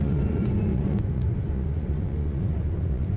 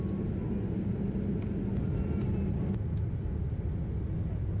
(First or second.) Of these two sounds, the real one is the second